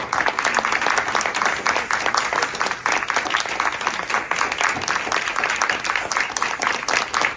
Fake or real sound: real